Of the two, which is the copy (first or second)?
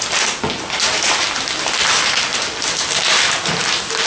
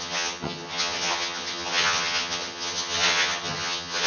second